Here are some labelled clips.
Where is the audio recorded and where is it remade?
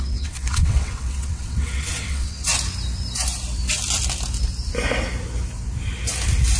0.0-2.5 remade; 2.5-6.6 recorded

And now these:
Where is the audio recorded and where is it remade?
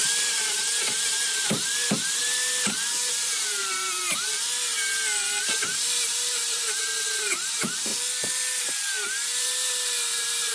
0.0-7.9 remade; 7.9-9.4 recorded; 9.4-10.5 remade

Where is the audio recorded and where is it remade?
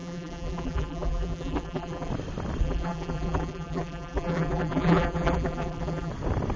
0.0-2.1 remade; 2.1-2.6 recorded; 2.6-6.1 remade; 6.1-6.6 recorded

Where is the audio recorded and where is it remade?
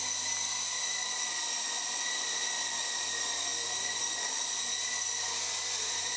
0.0-6.2 recorded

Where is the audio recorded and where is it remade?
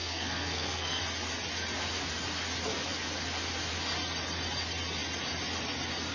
0.0-1.0 remade; 1.0-6.1 recorded